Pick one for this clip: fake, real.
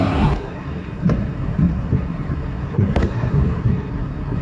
fake